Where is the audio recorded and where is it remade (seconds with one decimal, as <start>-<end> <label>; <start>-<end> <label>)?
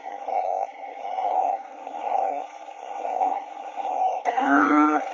0.0-5.1 remade